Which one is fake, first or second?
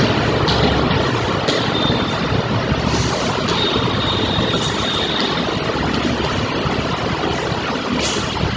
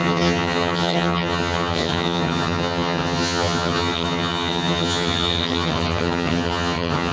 second